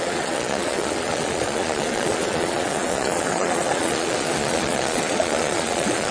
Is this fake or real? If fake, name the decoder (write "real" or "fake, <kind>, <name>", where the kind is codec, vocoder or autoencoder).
fake, vocoder, Vocos